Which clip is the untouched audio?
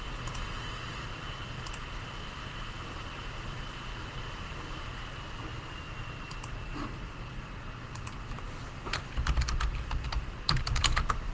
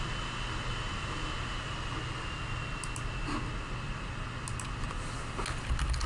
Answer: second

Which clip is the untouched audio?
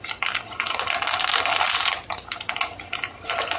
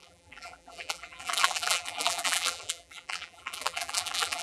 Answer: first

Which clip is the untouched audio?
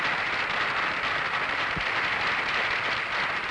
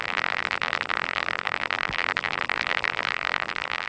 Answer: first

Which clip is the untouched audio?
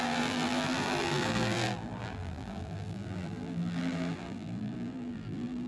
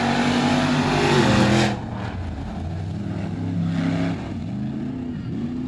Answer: second